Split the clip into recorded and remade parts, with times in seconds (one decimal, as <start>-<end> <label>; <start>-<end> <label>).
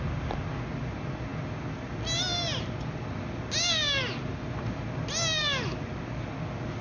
0.0-6.8 recorded